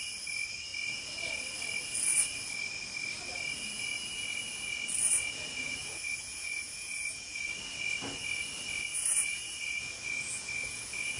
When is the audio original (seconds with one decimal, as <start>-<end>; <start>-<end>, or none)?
0.0-5.1; 7.5-8.9